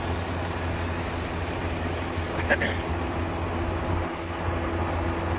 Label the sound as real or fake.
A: real